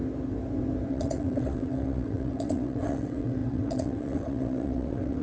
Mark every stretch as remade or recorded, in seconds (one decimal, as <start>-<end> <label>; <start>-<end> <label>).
0.0-0.9 recorded; 0.9-5.2 remade